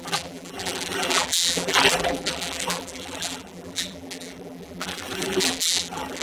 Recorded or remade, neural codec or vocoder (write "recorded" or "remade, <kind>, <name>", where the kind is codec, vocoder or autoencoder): remade, vocoder, BigVGAN v2